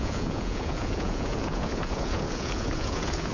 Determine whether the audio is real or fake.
fake